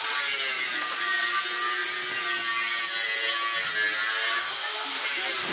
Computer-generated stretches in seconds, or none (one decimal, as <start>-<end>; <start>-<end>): 0.8-1.4